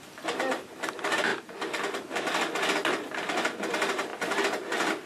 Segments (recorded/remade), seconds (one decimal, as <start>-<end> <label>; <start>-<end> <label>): 0.0-5.1 recorded